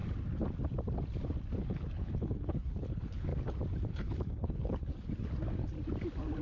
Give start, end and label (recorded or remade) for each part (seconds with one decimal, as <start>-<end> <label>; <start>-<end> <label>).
0.0-1.6 recorded; 1.6-3.3 remade; 3.3-3.9 recorded; 3.9-4.9 remade; 4.9-6.4 recorded